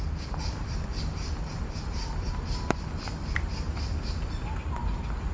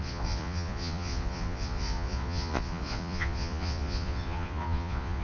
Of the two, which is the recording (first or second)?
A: first